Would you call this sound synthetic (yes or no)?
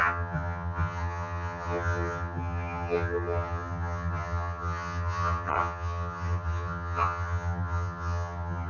yes